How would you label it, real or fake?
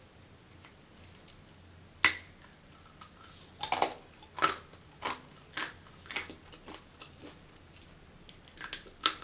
real